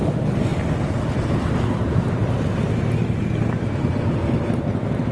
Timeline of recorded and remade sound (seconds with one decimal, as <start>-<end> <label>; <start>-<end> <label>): 0.0-5.1 recorded